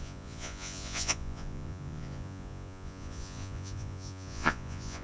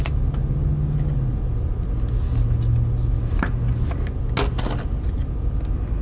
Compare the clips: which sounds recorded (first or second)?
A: second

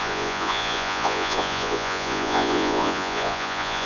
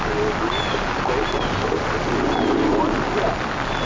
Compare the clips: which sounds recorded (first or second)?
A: second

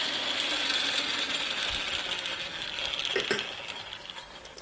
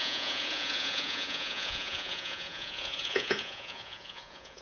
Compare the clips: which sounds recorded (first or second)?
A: first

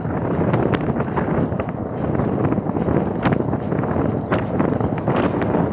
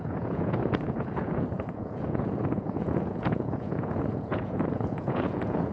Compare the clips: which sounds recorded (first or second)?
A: first